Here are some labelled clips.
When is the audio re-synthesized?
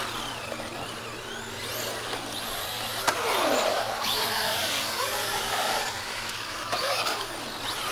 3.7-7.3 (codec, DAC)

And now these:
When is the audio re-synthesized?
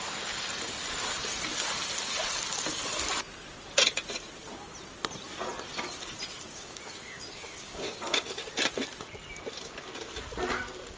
6.5-8.5 (codec, DAC)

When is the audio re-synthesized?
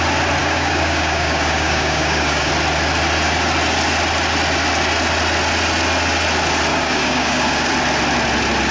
0.4-2.5 (codec, DAC); 6.7-7.7